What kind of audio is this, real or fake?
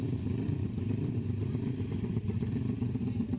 fake